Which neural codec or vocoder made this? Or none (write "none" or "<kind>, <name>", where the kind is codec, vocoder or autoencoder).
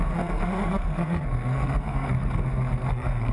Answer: codec, SNAC